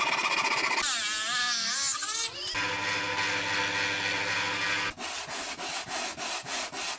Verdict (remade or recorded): recorded